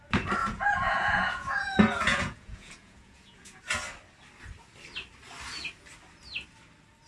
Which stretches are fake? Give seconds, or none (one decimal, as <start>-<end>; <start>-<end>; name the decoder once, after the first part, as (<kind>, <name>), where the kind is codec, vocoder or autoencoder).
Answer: 0.4-3.6 (vocoder, Vocos)